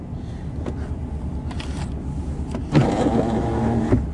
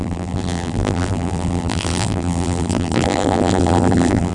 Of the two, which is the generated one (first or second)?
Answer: second